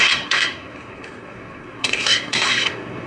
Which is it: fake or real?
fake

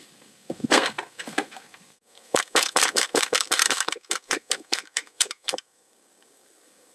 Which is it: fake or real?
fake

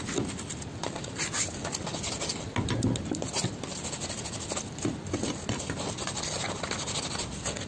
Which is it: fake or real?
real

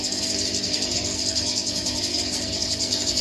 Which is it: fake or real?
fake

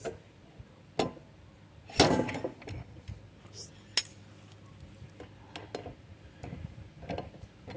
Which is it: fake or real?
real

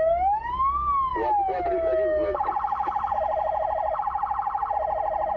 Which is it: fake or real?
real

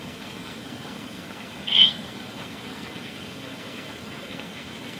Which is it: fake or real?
fake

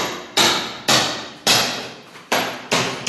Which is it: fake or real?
real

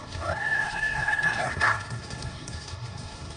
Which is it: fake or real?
fake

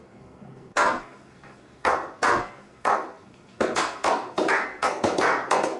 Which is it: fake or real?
fake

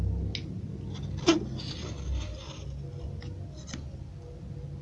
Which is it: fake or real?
real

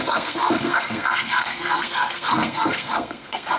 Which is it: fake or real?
fake